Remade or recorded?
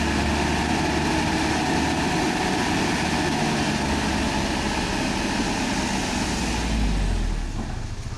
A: recorded